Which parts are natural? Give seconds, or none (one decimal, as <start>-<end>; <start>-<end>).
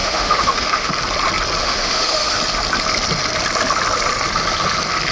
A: 0.9-1.6; 2.4-5.1